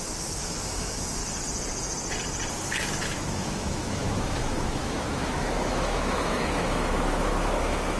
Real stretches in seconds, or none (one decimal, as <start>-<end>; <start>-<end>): 1.2-2.5